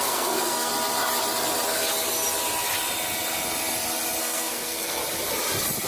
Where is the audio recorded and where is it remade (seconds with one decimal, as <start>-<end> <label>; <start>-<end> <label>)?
0.0-0.7 remade; 0.7-4.2 recorded; 4.2-5.0 remade; 5.0-5.9 recorded